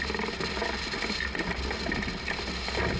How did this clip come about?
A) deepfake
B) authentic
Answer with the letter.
B